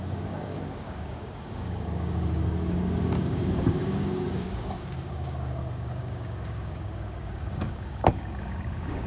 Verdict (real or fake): fake